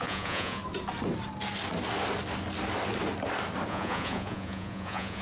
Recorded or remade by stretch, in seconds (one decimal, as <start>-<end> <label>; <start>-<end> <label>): 0.0-0.6 remade; 0.6-3.7 recorded; 3.7-5.2 remade